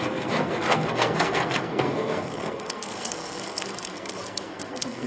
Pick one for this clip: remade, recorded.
remade